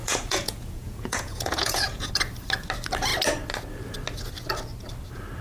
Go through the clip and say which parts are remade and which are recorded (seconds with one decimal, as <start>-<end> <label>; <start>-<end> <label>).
0.0-2.1 remade; 2.1-5.4 recorded